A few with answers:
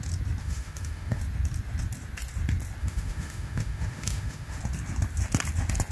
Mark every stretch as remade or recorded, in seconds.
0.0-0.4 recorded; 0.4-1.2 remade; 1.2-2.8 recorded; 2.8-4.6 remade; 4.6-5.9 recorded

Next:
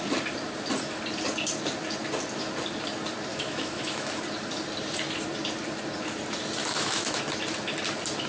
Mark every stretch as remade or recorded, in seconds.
0.0-3.3 recorded; 3.3-4.2 remade; 4.2-6.6 recorded; 6.6-7.2 remade; 7.2-8.3 recorded